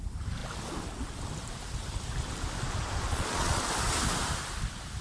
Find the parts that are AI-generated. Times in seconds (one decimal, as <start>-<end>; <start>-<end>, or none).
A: 3.1-3.7